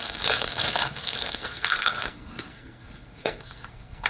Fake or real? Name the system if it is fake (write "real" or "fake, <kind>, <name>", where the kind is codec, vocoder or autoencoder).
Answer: fake, codec, SNAC